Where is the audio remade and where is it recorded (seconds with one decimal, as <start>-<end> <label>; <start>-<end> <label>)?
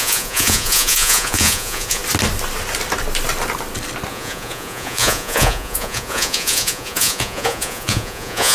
0.0-2.0 remade; 2.0-4.1 recorded; 4.1-8.5 remade